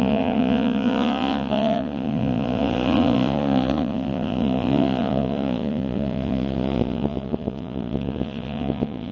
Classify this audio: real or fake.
fake